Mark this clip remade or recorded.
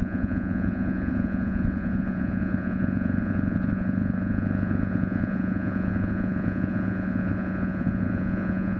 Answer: remade